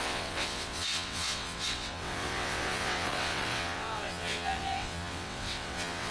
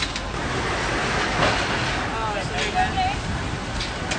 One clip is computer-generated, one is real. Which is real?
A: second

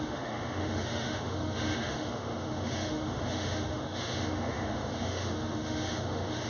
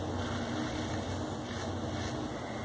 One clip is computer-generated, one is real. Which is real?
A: second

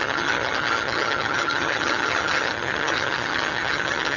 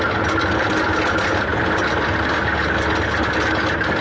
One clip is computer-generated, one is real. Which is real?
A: second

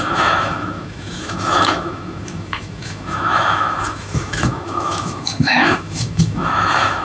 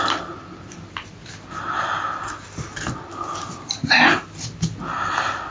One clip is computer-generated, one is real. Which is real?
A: second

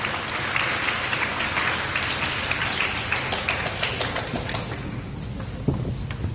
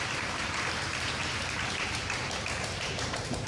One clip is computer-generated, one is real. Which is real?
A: first